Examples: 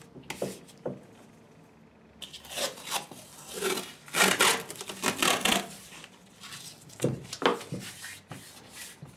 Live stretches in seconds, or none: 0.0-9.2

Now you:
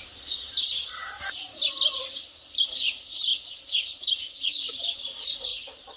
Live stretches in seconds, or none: 1.0-1.6

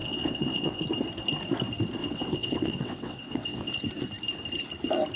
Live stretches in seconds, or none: 0.8-2.0; 3.7-5.2